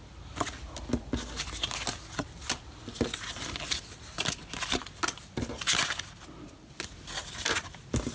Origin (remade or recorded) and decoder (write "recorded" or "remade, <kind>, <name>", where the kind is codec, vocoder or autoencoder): recorded